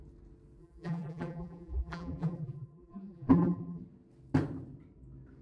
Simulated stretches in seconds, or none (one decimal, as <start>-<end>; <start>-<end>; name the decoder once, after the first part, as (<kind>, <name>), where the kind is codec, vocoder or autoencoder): 0.6-3.8 (vocoder, BigVGAN v2)